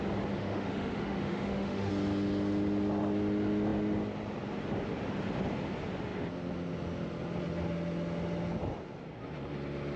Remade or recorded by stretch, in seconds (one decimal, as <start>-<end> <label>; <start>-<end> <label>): 0.0-0.4 recorded; 0.4-1.9 remade; 1.9-10.0 recorded